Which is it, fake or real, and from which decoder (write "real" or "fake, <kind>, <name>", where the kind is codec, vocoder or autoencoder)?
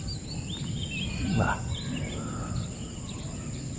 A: real